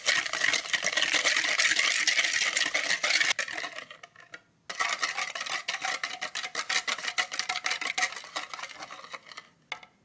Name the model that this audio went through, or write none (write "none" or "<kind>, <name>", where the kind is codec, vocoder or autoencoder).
none